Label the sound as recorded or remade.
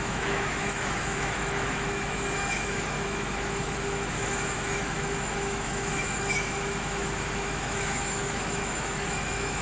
remade